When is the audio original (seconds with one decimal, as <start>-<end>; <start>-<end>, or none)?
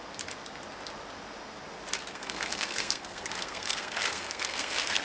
0.0-2.1